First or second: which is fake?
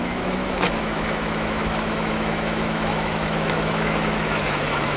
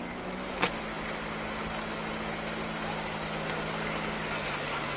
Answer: first